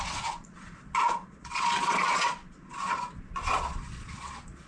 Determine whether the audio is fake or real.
fake